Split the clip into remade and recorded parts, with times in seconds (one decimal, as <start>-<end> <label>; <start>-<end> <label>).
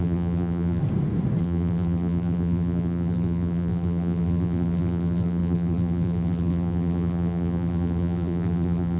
0.0-0.8 remade; 0.8-1.4 recorded; 1.4-9.0 remade